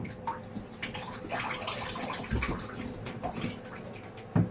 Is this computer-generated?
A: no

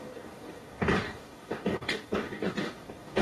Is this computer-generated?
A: yes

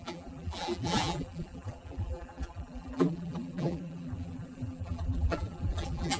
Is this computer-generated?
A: yes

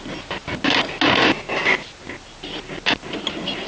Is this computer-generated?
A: no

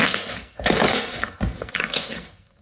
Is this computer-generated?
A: yes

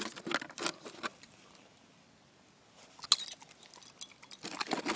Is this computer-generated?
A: no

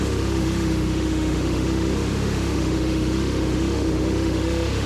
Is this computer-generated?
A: yes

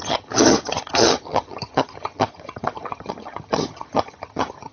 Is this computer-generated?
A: yes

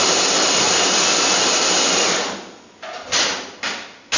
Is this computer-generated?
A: no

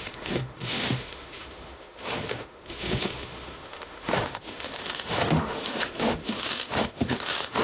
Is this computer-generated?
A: yes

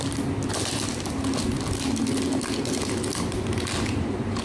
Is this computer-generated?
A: no